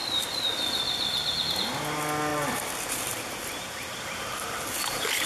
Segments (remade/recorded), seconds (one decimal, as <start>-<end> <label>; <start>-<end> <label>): 0.0-5.3 recorded